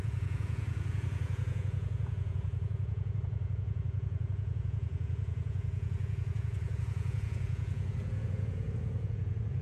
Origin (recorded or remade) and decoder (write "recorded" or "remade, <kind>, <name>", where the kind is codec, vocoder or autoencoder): remade, vocoder, Vocos